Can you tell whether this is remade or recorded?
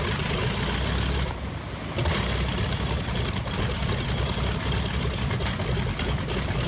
recorded